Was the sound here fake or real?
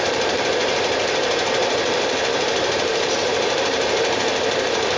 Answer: fake